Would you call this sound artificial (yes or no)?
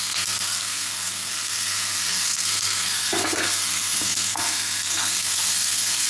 yes